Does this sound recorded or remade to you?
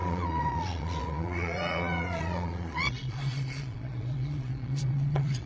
remade